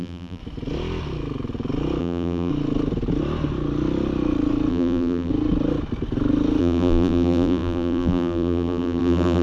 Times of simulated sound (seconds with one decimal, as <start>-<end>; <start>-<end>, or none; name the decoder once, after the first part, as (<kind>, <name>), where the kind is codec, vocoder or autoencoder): 0.0-0.4 (vocoder, BigVGAN v2); 2.0-2.5; 4.7-5.3; 6.6-9.4